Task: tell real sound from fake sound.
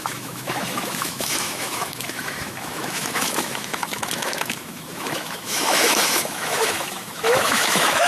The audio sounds fake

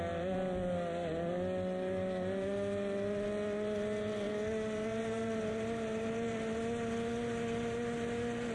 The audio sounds real